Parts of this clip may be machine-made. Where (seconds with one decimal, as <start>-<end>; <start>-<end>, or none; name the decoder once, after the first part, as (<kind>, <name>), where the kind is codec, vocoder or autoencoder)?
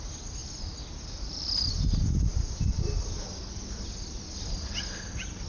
none